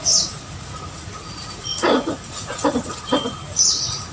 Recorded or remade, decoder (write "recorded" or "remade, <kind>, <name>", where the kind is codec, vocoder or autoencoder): remade, vocoder, Vocos